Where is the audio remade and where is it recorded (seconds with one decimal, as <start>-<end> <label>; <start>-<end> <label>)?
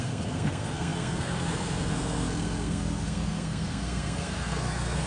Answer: 0.0-5.1 remade